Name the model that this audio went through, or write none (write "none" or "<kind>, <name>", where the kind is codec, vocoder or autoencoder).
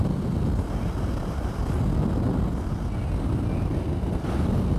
none